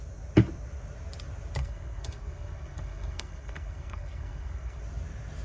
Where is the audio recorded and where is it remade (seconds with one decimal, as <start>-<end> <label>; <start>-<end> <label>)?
0.0-1.6 recorded; 1.6-4.8 remade; 4.8-5.4 recorded